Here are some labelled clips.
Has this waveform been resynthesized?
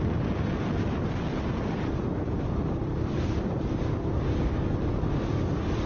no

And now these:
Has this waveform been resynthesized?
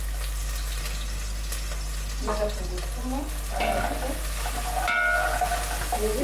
no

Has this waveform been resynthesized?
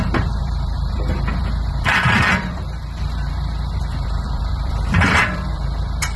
yes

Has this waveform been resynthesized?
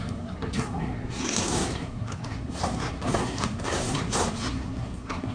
yes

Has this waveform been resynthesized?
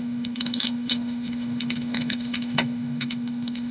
yes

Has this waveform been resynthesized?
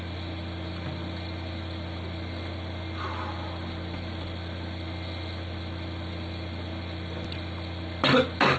no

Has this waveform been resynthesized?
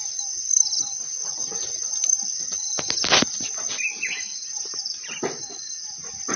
no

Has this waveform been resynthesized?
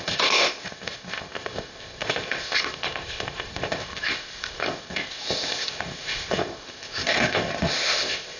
yes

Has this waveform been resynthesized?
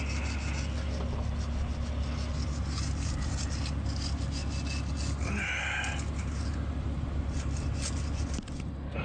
no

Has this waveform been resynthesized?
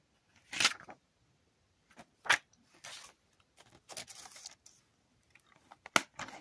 no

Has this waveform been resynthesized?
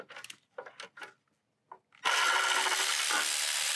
no